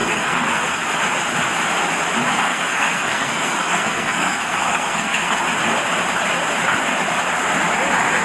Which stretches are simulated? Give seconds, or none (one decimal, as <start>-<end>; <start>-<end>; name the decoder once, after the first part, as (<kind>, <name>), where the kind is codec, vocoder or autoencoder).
0.0-0.8 (codec, SNAC); 2.3-5.4